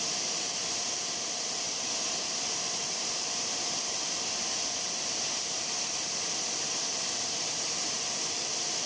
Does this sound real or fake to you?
fake